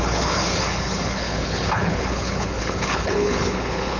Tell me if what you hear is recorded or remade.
remade